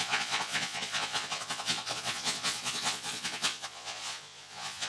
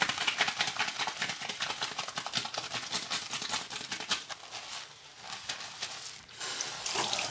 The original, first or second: second